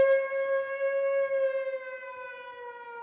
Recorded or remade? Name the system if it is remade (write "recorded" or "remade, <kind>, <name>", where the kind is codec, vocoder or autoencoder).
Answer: recorded